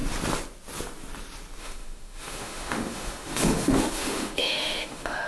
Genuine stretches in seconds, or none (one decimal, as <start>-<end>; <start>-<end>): 0.0-1.6